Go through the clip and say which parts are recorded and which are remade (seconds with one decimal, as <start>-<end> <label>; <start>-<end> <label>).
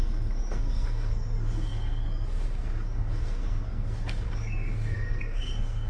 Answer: 0.0-5.9 remade